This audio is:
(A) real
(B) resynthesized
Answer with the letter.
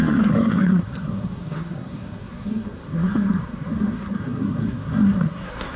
B